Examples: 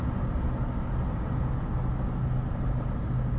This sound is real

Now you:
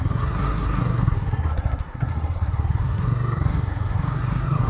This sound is fake